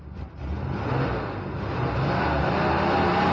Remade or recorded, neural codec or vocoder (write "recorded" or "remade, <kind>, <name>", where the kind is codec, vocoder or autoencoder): recorded